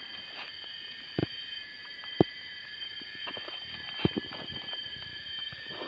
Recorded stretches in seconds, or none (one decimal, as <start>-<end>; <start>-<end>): 0.0-5.9